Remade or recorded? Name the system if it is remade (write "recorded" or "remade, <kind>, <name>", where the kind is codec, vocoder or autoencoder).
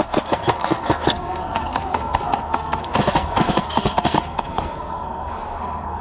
remade, codec, SNAC